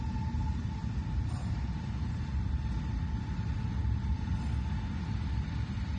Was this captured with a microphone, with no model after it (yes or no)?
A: yes